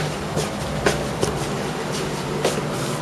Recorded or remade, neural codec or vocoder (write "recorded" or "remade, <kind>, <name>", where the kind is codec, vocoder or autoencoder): recorded